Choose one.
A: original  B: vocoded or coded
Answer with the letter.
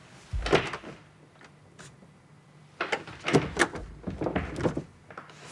A